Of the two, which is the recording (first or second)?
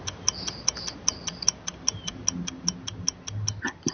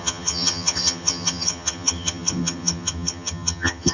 first